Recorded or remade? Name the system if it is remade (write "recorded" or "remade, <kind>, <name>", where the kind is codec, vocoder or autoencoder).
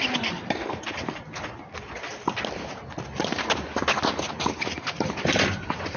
recorded